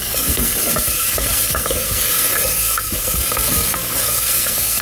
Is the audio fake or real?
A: fake